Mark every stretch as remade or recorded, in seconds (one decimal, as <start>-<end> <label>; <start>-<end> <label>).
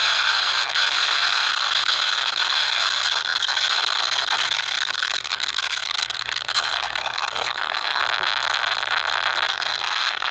0.0-8.0 remade; 8.0-9.5 recorded; 9.5-10.3 remade